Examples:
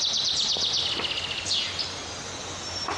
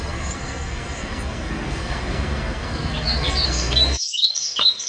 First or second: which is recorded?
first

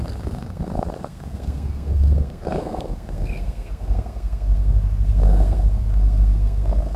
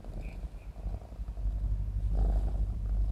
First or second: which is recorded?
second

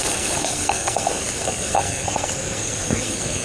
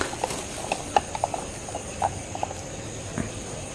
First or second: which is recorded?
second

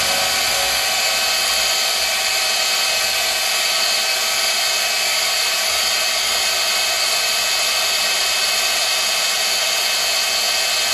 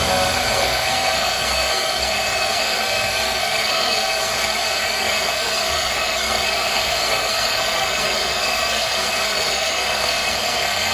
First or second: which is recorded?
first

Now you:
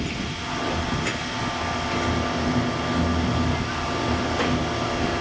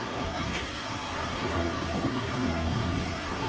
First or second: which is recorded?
first